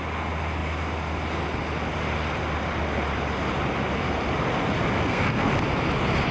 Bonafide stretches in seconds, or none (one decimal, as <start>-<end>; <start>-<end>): 0.0-5.0; 5.5-6.3